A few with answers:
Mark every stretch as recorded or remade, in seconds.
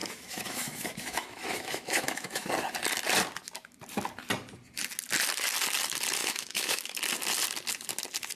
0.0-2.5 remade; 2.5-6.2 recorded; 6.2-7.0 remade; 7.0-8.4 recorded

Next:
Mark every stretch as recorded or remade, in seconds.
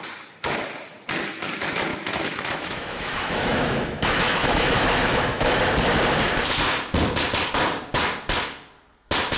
0.0-1.9 recorded; 1.9-5.6 remade; 5.6-9.4 recorded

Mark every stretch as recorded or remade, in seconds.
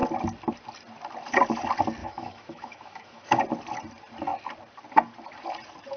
0.0-2.0 recorded; 2.0-3.4 remade; 3.4-6.0 recorded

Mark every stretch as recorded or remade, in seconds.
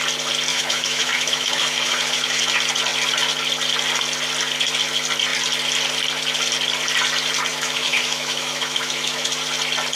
0.0-0.5 recorded; 0.5-2.4 remade; 2.4-7.5 recorded; 7.5-9.3 remade; 9.3-10.0 recorded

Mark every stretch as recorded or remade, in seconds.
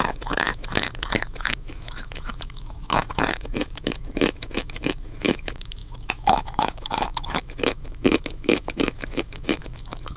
0.0-10.2 remade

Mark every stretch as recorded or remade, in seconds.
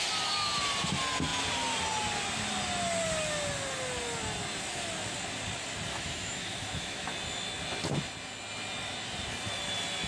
0.0-5.9 recorded; 5.9-7.1 remade; 7.1-10.1 recorded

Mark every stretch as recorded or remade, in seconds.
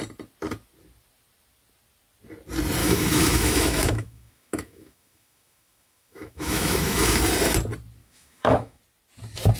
0.0-2.8 recorded; 2.8-7.2 remade; 7.2-8.0 recorded; 8.0-8.8 remade; 8.8-9.6 recorded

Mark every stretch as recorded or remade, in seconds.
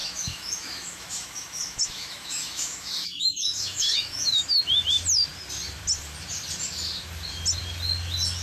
0.0-4.4 remade; 4.4-8.4 recorded